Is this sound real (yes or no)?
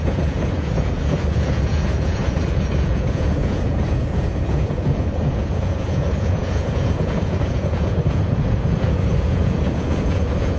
no